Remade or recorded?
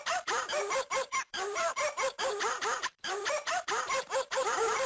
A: remade